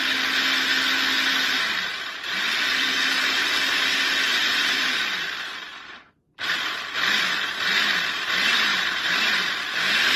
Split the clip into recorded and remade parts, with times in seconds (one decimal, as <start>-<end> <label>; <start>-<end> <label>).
0.0-1.9 recorded; 1.9-3.6 remade; 3.6-4.4 recorded; 4.4-6.1 remade; 6.1-8.7 recorded; 8.7-9.3 remade; 9.3-10.2 recorded

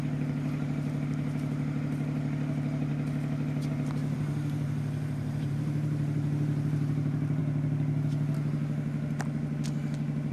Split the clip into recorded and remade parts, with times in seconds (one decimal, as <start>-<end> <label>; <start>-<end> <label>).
0.0-2.9 remade; 2.9-3.7 recorded; 3.7-7.4 remade; 7.4-10.3 recorded

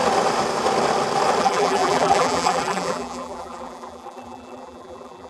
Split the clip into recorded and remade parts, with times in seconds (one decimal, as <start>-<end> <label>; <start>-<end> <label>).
0.0-1.4 recorded; 1.4-5.3 remade

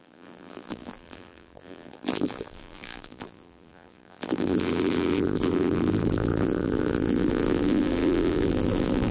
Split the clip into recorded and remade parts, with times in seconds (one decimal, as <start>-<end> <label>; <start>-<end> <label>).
0.0-9.1 remade

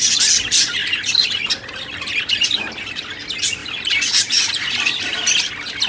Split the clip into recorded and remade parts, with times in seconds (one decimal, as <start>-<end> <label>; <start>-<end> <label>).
0.0-3.6 recorded; 3.6-5.5 remade; 5.5-5.9 recorded

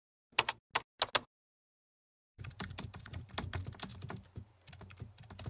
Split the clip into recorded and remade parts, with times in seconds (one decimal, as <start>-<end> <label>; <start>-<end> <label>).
0.0-2.3 recorded; 2.3-3.3 remade; 3.3-5.5 recorded

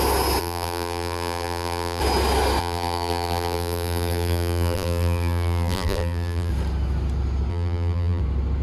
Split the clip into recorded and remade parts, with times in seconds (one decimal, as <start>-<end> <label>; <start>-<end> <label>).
0.0-0.4 recorded; 0.4-2.0 remade; 2.0-2.6 recorded; 2.6-6.5 remade; 6.5-7.5 recorded; 7.5-8.2 remade; 8.2-8.6 recorded